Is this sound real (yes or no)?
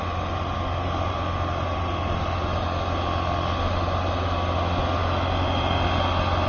yes